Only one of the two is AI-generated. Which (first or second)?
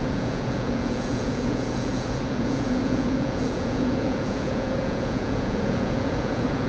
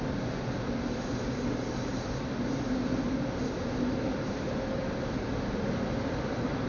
first